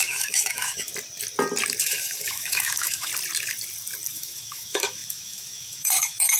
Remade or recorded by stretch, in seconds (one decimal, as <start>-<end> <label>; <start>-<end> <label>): 0.0-0.9 remade; 0.9-1.8 recorded; 1.8-3.1 remade; 3.1-4.1 recorded; 4.1-6.4 remade